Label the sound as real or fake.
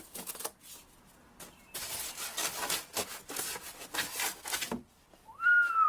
real